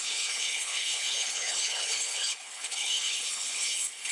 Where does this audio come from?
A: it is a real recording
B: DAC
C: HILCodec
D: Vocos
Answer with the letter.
C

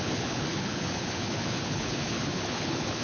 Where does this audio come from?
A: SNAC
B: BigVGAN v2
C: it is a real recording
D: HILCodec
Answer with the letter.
D